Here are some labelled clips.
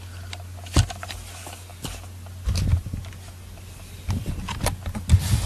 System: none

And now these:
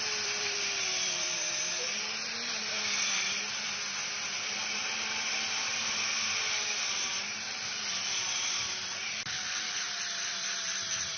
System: vocoder, BigVGAN v2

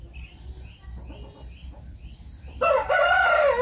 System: none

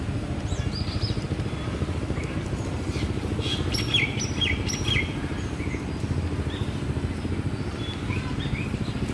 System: vocoder, BigVGAN v2